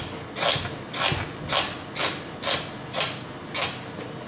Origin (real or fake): real